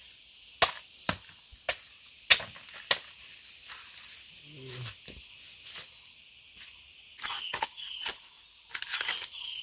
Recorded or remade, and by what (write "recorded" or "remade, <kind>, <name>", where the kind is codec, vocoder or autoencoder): recorded